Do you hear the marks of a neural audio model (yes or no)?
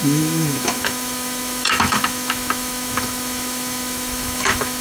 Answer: yes